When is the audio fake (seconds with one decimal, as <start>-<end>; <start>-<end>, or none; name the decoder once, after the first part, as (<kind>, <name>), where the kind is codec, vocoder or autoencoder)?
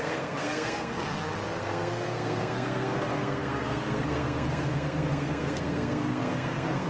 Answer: 0.0-6.9 (codec, SNAC)